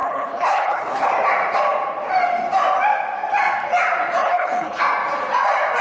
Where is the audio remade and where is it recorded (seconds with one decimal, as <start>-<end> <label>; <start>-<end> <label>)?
0.0-1.1 remade; 1.1-4.2 recorded; 4.2-4.8 remade; 4.8-5.8 recorded